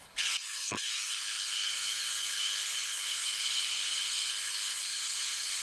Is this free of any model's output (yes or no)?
no